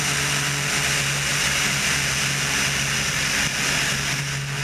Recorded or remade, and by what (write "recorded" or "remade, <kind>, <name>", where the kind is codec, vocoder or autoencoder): recorded